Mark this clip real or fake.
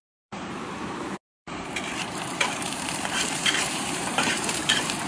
fake